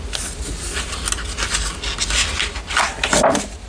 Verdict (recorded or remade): recorded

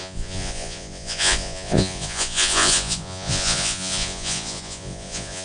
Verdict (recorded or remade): remade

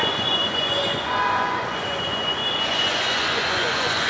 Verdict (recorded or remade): remade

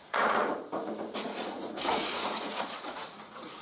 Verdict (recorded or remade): remade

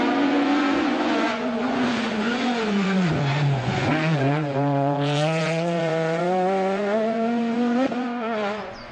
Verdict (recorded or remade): remade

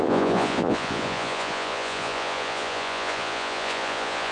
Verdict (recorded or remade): remade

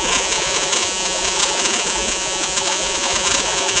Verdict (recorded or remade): remade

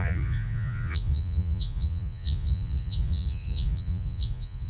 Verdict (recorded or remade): remade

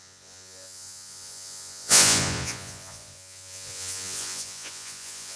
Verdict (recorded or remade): remade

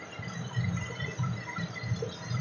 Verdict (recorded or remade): recorded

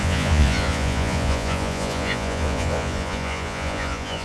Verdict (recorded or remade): remade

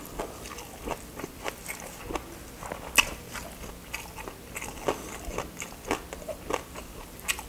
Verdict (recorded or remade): recorded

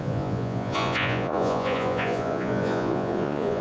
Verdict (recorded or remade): remade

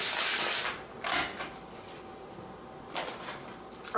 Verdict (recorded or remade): recorded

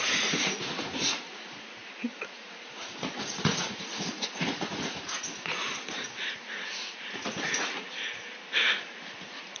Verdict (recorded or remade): remade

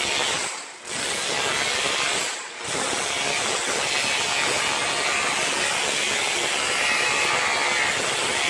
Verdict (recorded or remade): recorded